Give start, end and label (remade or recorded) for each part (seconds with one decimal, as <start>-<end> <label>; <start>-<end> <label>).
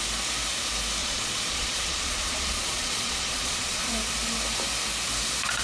0.0-1.0 recorded; 1.0-3.8 remade; 3.8-5.6 recorded